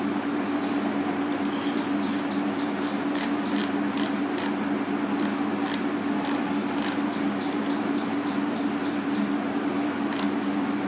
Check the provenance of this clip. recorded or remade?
recorded